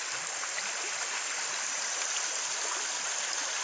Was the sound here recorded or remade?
recorded